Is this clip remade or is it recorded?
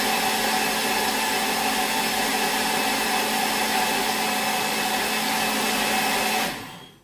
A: recorded